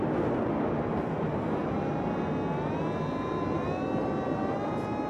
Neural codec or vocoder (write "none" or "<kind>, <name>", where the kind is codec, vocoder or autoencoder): none